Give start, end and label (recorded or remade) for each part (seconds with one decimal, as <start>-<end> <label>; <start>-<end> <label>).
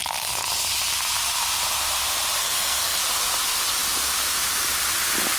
0.0-2.4 recorded; 2.4-3.0 remade; 3.0-5.4 recorded